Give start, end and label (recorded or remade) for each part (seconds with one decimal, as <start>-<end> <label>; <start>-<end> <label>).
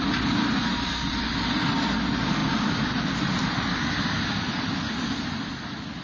0.0-6.0 recorded